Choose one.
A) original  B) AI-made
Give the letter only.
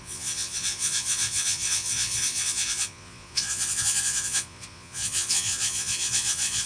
B